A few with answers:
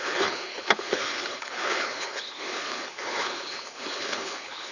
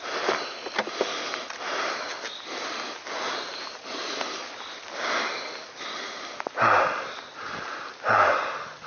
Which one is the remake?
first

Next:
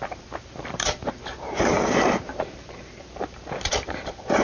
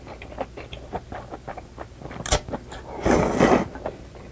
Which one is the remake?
first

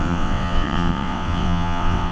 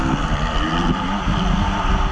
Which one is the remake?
first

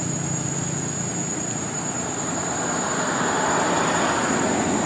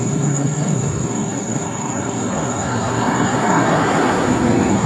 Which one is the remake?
second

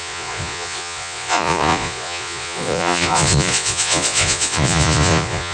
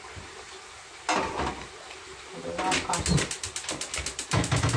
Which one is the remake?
first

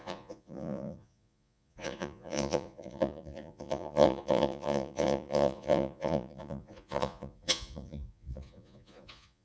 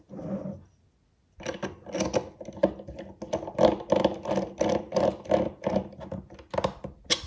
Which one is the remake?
first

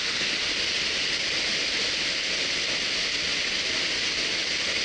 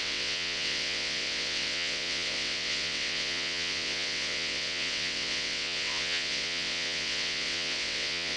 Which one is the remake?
second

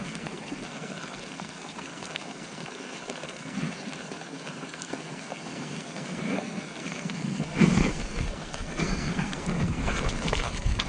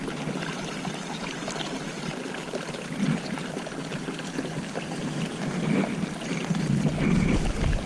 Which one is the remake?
first